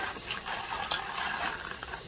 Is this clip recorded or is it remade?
remade